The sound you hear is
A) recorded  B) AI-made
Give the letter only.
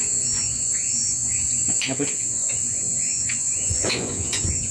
B